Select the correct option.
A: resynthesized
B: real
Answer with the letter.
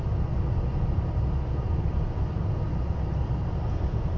B